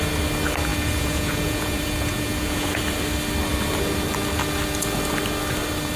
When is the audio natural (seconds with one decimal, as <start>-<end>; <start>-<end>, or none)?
0.0-0.7; 2.8-6.0